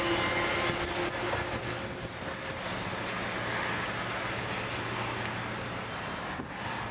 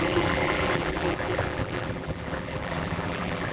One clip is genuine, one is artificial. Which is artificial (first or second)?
second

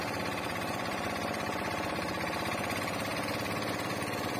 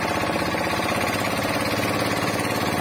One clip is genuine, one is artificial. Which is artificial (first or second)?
first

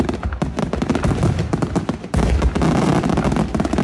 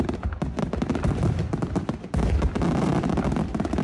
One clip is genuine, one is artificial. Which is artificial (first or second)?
second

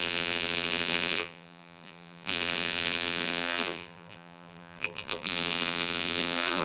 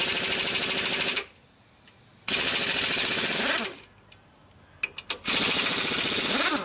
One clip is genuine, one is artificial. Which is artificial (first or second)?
first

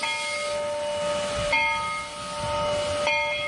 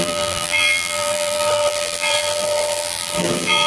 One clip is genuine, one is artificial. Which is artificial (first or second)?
second